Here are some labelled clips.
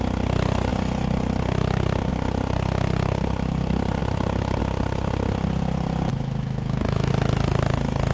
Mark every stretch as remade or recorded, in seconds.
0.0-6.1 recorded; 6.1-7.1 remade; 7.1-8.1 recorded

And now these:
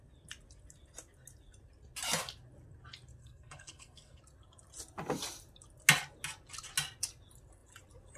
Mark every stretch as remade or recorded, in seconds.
0.0-3.2 recorded; 3.2-4.2 remade; 4.2-8.2 recorded

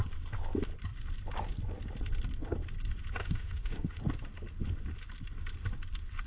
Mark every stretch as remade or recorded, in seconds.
0.0-3.2 recorded; 3.2-4.0 remade; 4.0-6.3 recorded

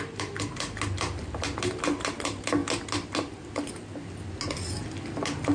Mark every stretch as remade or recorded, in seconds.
0.0-5.5 recorded

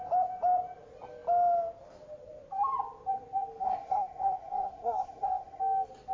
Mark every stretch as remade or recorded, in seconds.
0.0-3.6 recorded; 3.6-5.6 remade; 5.6-6.1 recorded

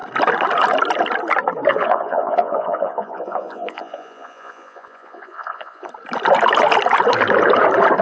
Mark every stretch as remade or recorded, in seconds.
0.0-1.7 recorded; 1.7-5.9 remade; 5.9-8.0 recorded

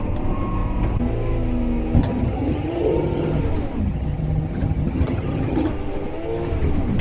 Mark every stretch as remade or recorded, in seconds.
0.0-2.0 recorded; 2.0-3.4 remade; 3.4-3.8 recorded; 3.8-5.7 remade; 5.7-7.0 recorded

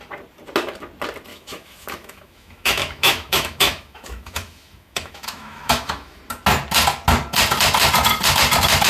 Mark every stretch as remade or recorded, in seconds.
0.0-1.3 recorded; 1.3-6.2 remade; 6.2-8.9 recorded